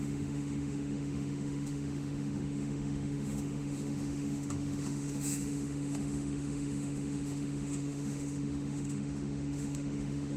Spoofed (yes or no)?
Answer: yes